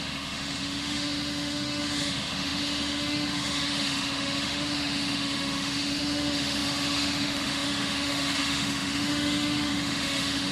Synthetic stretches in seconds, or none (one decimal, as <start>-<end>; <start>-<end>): 0.0-10.5